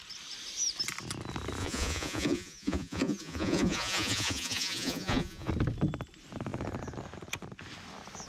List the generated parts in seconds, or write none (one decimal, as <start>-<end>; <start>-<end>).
1.6-5.5